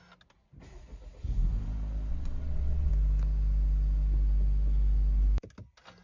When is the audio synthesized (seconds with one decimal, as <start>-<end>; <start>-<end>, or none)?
2.1-2.9